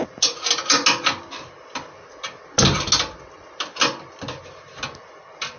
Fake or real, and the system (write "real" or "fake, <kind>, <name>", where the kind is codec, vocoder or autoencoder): real